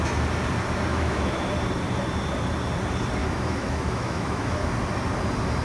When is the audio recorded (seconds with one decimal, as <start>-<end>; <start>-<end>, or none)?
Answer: 0.0-0.9; 1.5-3.2; 4.7-5.6